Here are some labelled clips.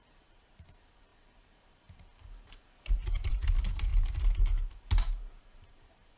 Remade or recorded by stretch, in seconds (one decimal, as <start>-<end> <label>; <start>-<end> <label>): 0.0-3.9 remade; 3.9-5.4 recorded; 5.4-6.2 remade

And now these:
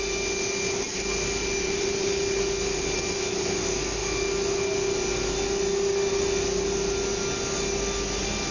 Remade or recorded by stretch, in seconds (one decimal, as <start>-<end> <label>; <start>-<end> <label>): 0.0-1.4 recorded; 1.4-2.4 remade; 2.4-8.5 recorded

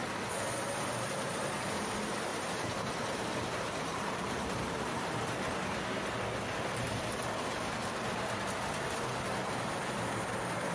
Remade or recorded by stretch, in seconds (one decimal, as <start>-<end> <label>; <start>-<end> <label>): 0.0-2.3 recorded; 2.3-5.8 remade; 5.8-10.7 recorded

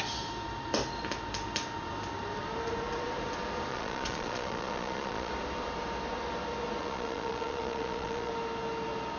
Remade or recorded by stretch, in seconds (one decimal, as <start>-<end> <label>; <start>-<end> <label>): 0.0-3.7 recorded; 3.7-5.3 remade; 5.3-6.8 recorded; 6.8-8.3 remade; 8.3-9.2 recorded

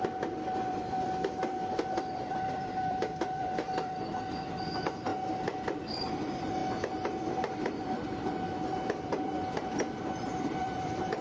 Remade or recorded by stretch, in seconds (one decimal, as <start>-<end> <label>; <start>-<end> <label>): 0.0-5.1 remade; 5.1-5.9 recorded; 5.9-6.6 remade; 6.6-7.4 recorded; 7.4-11.2 remade

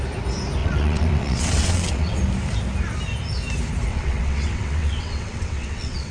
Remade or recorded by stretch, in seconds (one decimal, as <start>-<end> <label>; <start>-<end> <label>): 0.0-0.6 recorded; 0.6-2.2 remade; 2.2-3.9 recorded; 3.9-6.1 remade

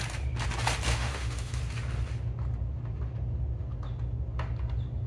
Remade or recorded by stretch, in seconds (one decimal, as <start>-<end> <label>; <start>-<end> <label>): 0.0-0.9 recorded; 0.9-1.6 remade; 1.6-5.1 recorded